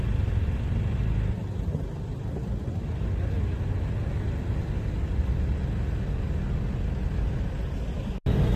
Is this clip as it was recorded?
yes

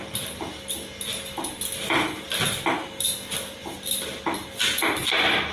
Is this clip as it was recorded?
yes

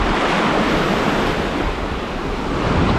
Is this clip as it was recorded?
yes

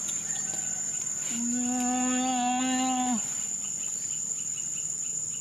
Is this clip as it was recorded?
yes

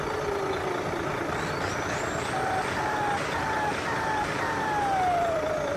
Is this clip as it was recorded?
yes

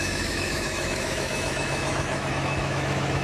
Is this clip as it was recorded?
no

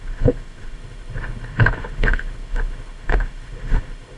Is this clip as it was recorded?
no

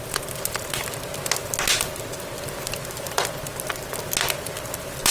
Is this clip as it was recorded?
yes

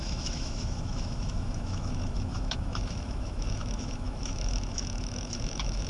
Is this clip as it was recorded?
no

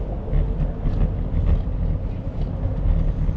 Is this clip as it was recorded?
yes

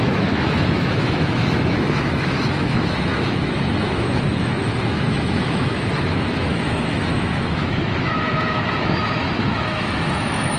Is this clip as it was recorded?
no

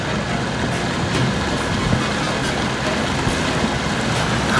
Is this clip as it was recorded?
yes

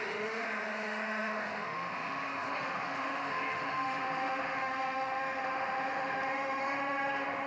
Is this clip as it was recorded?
no